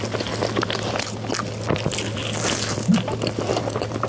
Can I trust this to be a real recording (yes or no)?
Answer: yes